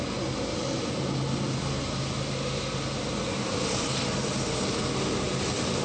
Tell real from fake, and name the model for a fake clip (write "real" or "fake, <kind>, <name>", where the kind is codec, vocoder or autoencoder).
real